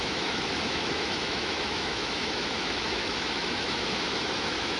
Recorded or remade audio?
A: remade